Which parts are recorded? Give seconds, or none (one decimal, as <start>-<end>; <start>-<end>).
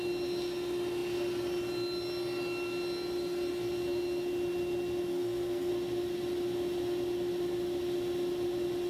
0.0-5.1; 5.7-8.9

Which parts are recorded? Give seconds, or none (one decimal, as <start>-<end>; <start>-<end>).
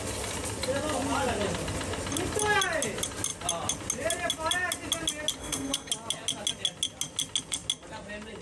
0.0-5.4; 5.9-8.4